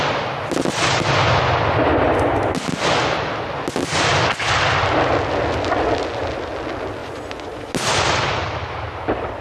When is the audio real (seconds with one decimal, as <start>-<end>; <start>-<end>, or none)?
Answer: 0.0-7.0; 7.6-9.4

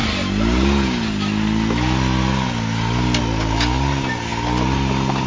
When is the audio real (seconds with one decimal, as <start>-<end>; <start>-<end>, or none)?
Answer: 0.0-5.3

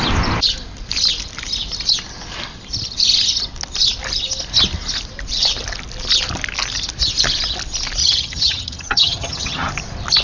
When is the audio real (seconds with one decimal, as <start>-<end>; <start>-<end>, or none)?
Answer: 0.0-8.0; 9.7-10.2

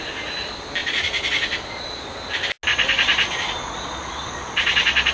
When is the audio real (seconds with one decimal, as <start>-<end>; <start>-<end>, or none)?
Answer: 0.0-0.8; 2.1-2.7